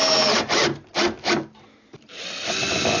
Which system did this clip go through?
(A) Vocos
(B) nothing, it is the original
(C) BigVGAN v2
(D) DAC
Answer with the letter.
B